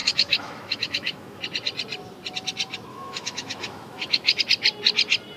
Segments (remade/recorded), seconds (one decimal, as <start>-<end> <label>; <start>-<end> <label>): 0.0-1.4 remade; 1.4-2.9 recorded; 2.9-4.4 remade; 4.4-5.4 recorded